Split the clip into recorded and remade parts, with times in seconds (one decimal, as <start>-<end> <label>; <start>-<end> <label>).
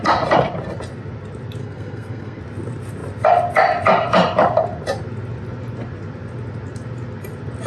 0.0-1.6 recorded; 1.6-2.4 remade; 2.4-7.7 recorded